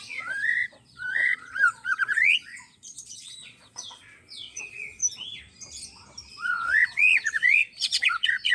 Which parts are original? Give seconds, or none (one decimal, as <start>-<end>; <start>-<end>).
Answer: 5.0-6.3